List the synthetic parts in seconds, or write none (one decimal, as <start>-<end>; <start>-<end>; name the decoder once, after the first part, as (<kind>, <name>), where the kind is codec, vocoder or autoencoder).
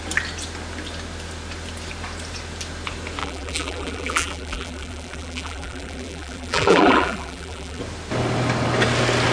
3.2-7.8 (vocoder, BigVGAN v2)